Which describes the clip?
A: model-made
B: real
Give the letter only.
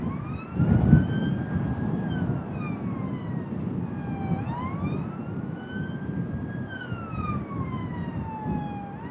B